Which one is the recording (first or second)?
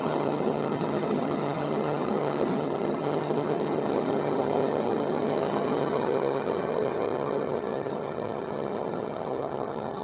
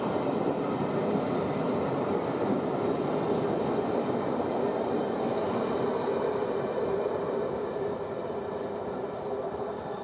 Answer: second